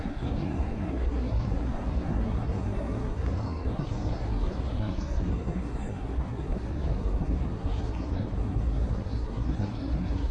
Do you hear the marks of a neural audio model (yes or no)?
yes